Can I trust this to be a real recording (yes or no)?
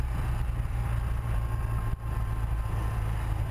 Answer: yes